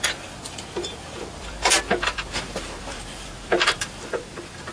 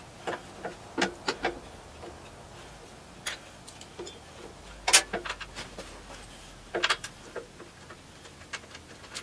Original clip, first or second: second